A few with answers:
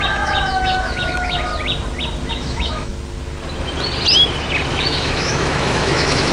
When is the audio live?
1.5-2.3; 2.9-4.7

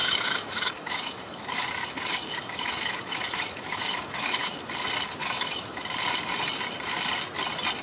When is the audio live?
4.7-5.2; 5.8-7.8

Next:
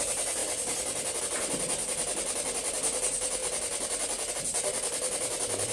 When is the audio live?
0.0-5.7